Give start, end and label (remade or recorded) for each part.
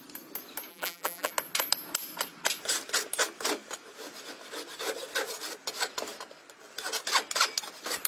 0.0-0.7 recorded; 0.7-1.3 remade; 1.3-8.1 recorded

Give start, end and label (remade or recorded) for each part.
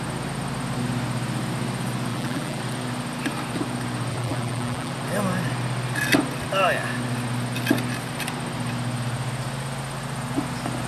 0.0-2.1 recorded; 2.1-2.6 remade; 2.6-4.1 recorded; 4.1-4.9 remade; 4.9-10.9 recorded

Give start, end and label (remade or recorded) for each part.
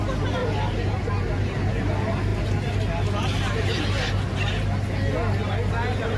0.0-0.4 recorded; 0.4-1.7 remade; 1.7-6.2 recorded